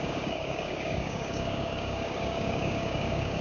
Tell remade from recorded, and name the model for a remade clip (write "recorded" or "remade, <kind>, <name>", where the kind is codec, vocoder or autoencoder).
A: remade, codec, DAC